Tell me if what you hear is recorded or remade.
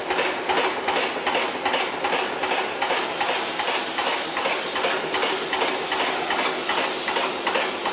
recorded